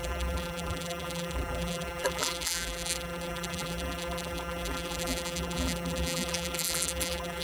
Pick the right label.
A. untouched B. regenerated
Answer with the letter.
B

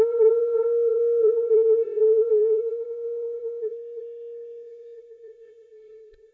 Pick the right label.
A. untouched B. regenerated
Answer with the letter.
B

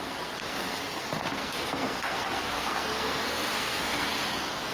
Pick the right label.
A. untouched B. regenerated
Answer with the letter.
B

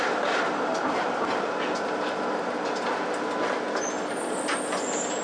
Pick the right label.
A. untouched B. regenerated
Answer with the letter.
A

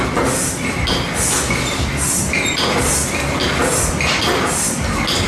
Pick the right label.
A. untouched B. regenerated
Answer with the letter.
A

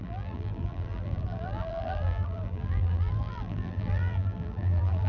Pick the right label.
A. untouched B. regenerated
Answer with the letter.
B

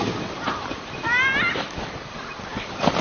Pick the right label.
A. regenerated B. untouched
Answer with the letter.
B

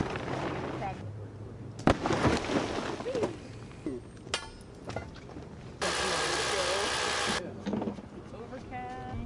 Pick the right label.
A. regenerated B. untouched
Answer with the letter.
B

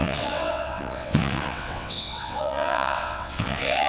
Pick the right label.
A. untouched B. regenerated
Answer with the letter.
B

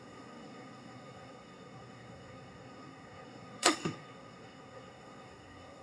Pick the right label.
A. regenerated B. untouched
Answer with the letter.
A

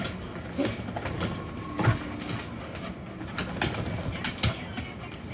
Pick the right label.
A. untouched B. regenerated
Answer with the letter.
A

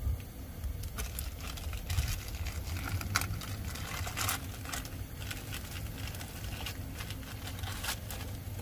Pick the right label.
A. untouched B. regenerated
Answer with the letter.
A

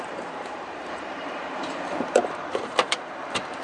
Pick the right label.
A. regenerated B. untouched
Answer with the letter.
A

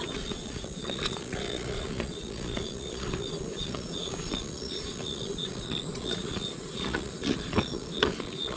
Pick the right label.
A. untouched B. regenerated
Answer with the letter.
B